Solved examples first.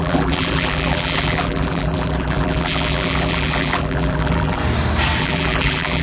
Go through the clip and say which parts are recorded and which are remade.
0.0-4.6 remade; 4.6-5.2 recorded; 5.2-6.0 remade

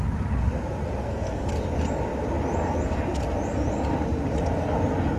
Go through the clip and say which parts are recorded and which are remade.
0.0-1.0 recorded; 1.0-1.5 remade; 1.5-5.2 recorded

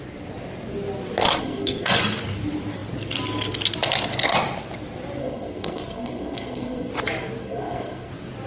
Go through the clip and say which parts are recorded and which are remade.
0.0-1.4 recorded; 1.4-2.0 remade; 2.0-5.2 recorded; 5.2-6.9 remade; 6.9-7.4 recorded; 7.4-8.1 remade; 8.1-8.5 recorded

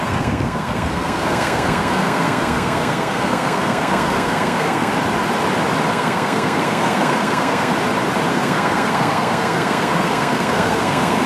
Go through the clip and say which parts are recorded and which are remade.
0.0-4.9 remade; 4.9-5.9 recorded; 5.9-7.7 remade; 7.7-8.3 recorded; 8.3-11.3 remade

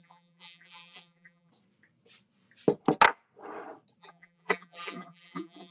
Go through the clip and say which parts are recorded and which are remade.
0.0-1.5 remade; 1.5-4.0 recorded; 4.0-5.7 remade

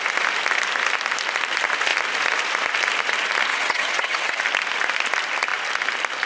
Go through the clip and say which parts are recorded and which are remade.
0.0-3.5 recorded; 3.5-4.4 remade; 4.4-6.3 recorded

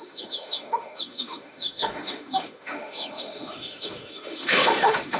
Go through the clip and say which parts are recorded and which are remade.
0.0-5.2 remade